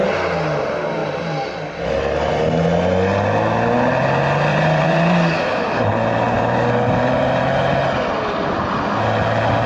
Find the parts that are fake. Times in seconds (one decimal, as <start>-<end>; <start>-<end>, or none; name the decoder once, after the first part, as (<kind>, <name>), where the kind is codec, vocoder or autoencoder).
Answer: 4.5-7.4 (vocoder, BigVGAN v2)